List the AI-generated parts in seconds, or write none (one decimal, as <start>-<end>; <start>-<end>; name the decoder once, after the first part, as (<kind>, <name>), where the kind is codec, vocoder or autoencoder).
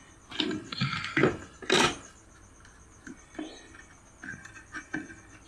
none